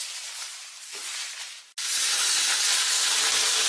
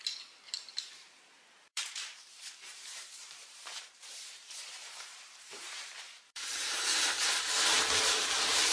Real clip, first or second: first